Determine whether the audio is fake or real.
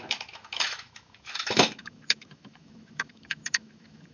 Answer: fake